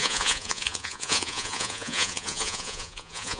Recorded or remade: remade